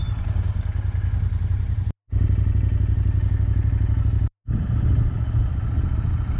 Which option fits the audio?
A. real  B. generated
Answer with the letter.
A